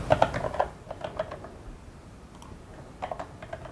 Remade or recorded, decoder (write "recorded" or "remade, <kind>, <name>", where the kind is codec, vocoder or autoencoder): recorded